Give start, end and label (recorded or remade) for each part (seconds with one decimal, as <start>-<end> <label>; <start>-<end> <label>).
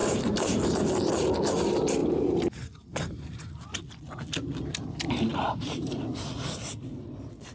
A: 0.0-0.8 remade; 0.8-2.0 recorded; 2.0-3.8 remade; 3.8-5.3 recorded; 5.3-6.3 remade; 6.3-7.5 recorded